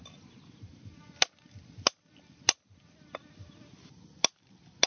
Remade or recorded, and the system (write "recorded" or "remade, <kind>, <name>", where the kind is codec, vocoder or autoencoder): recorded